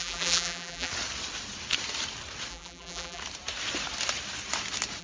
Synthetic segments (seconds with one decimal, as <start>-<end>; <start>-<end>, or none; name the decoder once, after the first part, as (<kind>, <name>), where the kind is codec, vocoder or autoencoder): 0.0-0.9 (vocoder, BigVGAN v2); 2.5-3.2